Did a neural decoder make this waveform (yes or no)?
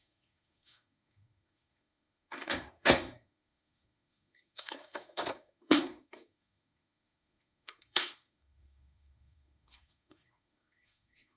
yes